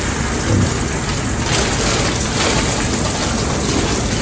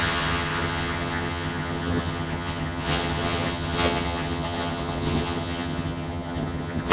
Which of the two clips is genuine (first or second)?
first